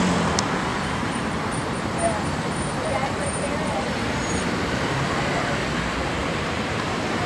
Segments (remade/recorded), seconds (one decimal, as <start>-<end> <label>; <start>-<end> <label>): 0.0-0.7 recorded; 0.7-5.1 remade; 5.1-6.2 recorded; 6.2-7.3 remade